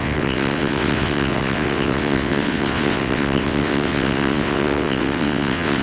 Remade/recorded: remade